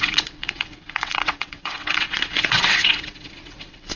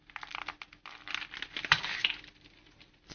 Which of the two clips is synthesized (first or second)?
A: first